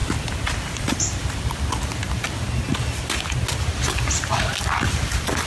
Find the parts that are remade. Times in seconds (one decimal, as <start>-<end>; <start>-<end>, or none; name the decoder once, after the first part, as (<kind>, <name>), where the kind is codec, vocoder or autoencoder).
0.0-1.7 (vocoder, BigVGAN v2)